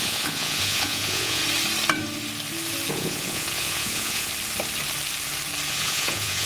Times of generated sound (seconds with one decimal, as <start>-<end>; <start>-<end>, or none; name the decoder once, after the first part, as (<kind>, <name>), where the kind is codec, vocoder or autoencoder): 0.0-1.4 (vocoder, Vocos); 2.9-4.3; 5.7-6.5